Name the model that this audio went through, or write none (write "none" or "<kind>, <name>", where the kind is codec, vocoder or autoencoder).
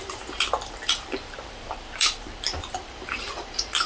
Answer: vocoder, BigVGAN v2